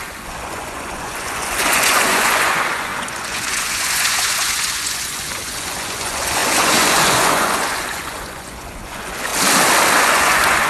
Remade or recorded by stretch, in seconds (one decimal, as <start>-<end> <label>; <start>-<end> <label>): 0.0-9.3 remade; 9.3-10.0 recorded; 10.0-10.7 remade